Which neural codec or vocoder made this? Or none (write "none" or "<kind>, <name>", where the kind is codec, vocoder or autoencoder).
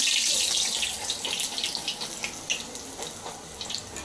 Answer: none